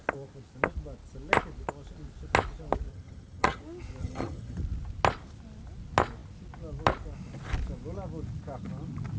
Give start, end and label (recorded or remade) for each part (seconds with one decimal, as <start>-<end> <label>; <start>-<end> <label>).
0.0-2.9 recorded; 2.9-3.6 remade; 3.6-4.0 recorded; 4.0-4.6 remade; 4.6-9.2 recorded